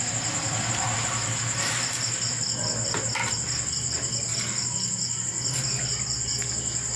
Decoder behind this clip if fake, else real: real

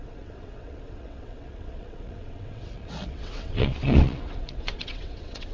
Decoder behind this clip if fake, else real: fake, vocoder, WaveNeXt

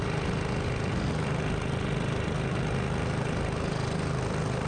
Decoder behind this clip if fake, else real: real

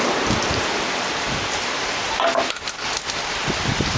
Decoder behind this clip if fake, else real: real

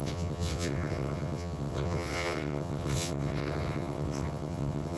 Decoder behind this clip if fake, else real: fake, vocoder, WaveNeXt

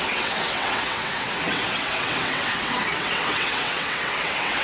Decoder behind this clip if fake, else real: fake, vocoder, WaveNeXt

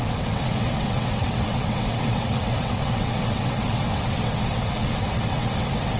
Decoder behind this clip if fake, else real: fake, vocoder, WaveNeXt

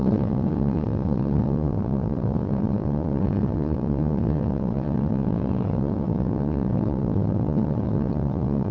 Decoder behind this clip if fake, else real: fake, vocoder, WaveNeXt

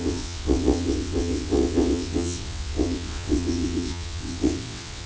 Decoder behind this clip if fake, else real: fake, vocoder, WaveNeXt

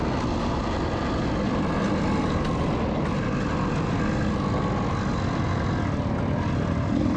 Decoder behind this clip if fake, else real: real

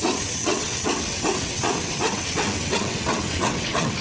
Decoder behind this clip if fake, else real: fake, vocoder, WaveNeXt